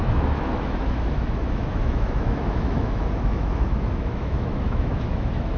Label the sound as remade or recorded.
remade